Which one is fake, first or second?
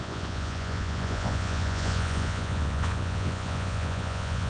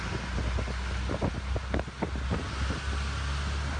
first